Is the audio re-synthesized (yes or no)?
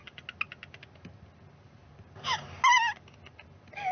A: no